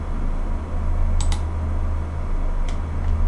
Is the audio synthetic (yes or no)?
no